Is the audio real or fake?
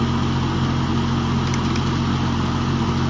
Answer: real